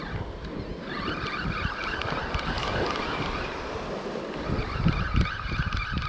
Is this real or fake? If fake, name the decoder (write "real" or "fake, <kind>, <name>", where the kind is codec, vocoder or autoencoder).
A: real